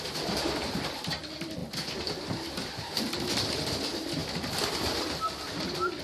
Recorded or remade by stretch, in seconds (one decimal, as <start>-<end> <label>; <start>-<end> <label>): 0.0-6.0 recorded